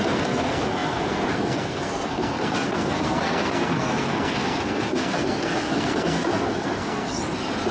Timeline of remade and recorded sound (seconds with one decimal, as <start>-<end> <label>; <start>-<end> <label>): 0.0-7.2 remade; 7.2-7.7 recorded

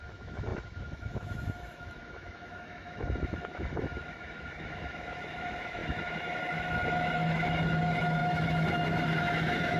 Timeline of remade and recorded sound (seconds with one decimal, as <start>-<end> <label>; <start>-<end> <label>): 0.0-9.8 remade

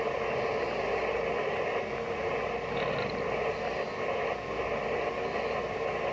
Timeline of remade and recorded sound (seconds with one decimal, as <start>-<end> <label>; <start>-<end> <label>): 0.0-4.6 recorded; 4.6-5.1 remade; 5.1-6.1 recorded

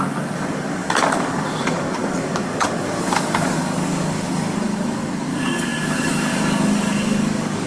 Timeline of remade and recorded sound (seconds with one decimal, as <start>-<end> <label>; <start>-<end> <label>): 0.0-7.7 remade

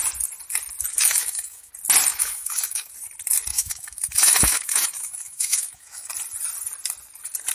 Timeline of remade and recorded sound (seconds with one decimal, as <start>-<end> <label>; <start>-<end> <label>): 0.0-0.9 recorded; 0.9-1.7 remade; 1.7-2.1 recorded; 2.1-2.9 remade; 2.9-3.5 recorded; 3.5-6.1 remade; 6.1-7.5 recorded

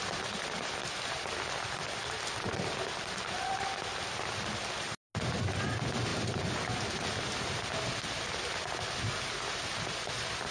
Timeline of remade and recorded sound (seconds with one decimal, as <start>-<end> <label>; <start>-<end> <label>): 0.0-10.5 recorded

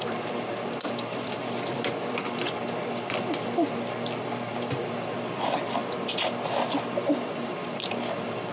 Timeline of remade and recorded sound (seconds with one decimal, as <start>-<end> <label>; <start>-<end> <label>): 0.0-8.5 remade

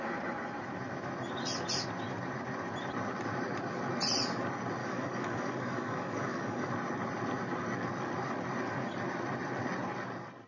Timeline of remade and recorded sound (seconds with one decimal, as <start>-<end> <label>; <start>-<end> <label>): 0.0-4.8 recorded; 4.8-6.7 remade; 6.7-10.5 recorded